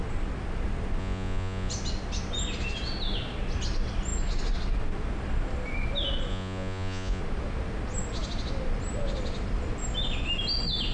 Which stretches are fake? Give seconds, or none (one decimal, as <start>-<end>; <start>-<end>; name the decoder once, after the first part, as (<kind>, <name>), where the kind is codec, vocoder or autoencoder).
1.0-1.7 (vocoder, Vocos); 6.3-7.2